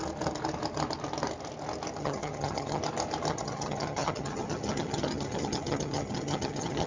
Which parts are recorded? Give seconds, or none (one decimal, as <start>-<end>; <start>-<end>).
0.0-2.0; 2.8-3.3